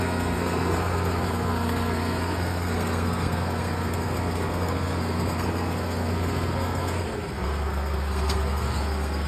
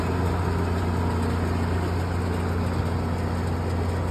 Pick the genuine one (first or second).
second